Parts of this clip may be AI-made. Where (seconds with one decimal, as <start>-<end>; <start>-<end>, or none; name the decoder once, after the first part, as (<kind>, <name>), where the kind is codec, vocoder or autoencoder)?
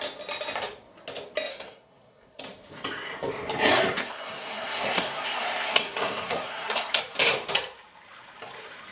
1.5-2.4 (codec, SNAC); 4.0-7.0